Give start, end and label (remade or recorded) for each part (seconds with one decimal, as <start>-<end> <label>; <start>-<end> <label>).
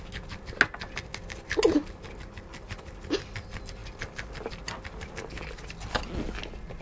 0.0-6.8 recorded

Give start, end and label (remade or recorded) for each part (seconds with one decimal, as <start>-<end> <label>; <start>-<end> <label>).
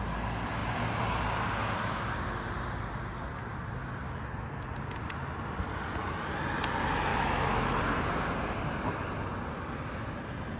0.0-7.1 recorded; 7.1-7.8 remade; 7.8-10.6 recorded